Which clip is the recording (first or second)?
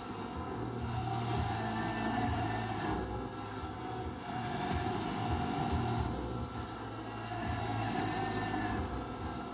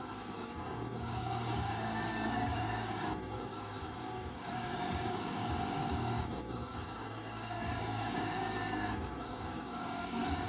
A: first